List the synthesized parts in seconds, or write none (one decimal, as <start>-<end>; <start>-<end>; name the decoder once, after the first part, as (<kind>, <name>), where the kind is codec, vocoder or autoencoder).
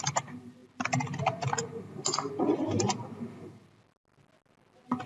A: none